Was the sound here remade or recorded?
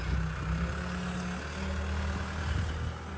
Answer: recorded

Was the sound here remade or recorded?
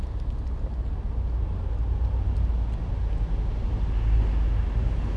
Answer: recorded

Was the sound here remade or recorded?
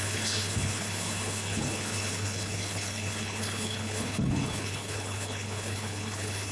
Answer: remade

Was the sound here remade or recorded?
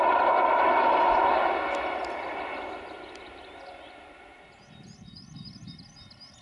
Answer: recorded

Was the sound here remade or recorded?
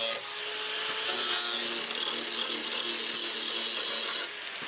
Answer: recorded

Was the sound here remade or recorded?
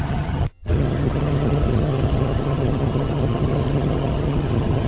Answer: remade